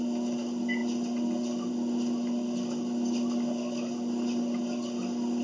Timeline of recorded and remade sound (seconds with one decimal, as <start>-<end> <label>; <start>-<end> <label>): 0.0-5.4 recorded